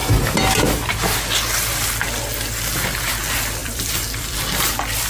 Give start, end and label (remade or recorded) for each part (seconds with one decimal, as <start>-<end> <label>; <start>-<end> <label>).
0.0-3.6 recorded; 3.6-4.4 remade; 4.4-5.1 recorded